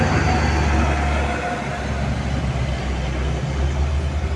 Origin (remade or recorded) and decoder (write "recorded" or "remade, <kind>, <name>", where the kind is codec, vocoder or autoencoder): recorded